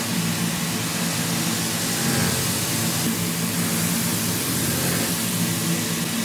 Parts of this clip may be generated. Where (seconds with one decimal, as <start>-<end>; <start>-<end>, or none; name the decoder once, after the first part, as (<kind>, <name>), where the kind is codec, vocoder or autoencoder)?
none